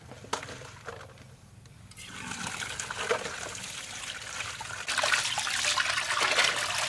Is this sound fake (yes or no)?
no